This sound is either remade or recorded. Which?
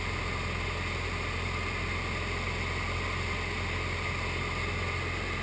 recorded